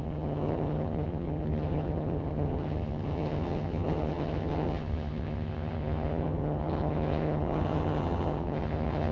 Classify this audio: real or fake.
fake